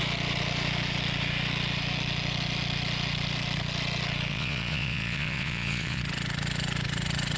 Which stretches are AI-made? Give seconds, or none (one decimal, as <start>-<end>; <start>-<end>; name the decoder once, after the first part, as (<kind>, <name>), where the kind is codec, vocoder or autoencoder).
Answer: 4.3-6.0 (vocoder, Vocos)